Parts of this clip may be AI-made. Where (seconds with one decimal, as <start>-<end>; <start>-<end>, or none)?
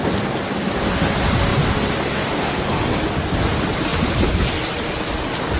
3.9-4.9